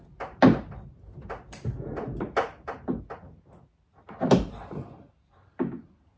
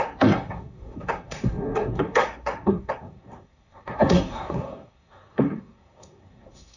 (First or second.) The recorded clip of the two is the first